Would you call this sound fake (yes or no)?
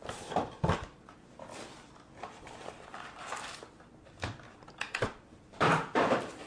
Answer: yes